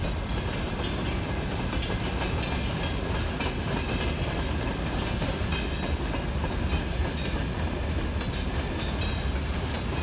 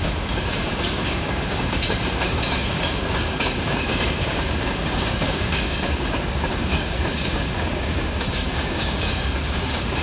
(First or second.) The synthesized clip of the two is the second